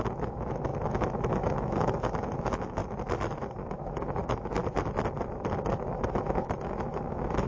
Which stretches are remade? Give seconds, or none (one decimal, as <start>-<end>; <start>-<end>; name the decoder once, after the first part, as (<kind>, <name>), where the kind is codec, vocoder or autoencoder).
0.0-2.8 (autoencoder, DAC-VAE); 3.7-4.6; 5.9-7.5